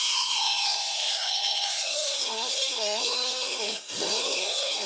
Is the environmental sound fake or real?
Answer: fake